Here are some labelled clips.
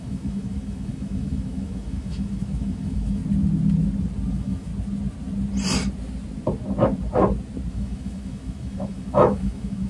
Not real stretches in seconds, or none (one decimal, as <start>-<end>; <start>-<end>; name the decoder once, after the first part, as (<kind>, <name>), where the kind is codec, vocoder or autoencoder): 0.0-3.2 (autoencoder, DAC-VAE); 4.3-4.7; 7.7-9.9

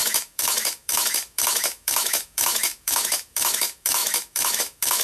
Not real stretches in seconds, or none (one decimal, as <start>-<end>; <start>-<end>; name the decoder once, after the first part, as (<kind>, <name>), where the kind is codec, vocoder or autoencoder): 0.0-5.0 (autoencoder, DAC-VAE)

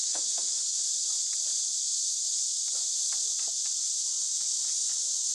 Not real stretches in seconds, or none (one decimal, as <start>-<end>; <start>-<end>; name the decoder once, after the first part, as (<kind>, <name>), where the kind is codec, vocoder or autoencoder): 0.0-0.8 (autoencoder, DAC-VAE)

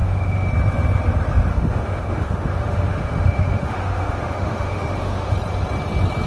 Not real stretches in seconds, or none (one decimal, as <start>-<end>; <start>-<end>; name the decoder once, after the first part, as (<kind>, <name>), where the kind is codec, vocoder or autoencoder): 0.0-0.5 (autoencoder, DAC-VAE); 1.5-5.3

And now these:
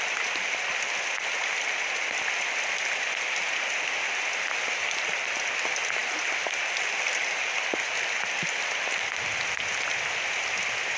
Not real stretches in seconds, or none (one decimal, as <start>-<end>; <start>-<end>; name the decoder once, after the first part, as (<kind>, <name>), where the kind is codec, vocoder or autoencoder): none

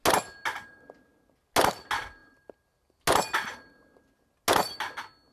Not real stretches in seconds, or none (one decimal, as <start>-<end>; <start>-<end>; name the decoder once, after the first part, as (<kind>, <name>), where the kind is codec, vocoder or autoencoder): none

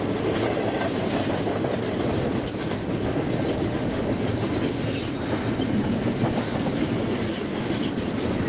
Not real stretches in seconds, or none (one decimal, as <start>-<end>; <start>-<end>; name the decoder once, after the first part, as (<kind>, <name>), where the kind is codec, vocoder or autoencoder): 3.5-4.0 (autoencoder, DAC-VAE)